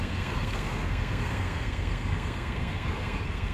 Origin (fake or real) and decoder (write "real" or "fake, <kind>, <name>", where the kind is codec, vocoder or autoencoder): fake, codec, SNAC